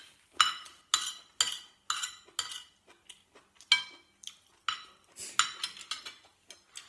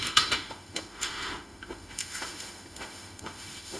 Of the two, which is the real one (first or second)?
first